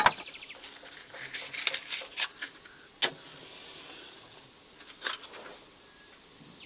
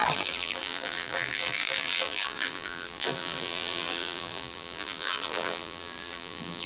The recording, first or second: first